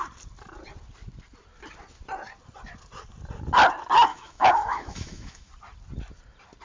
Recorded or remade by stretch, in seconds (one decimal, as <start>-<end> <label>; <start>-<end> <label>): 0.0-4.1 recorded; 4.1-5.5 remade; 5.5-6.6 recorded